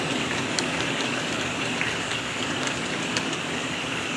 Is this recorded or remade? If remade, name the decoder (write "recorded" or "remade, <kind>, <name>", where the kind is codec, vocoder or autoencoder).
remade, codec, DAC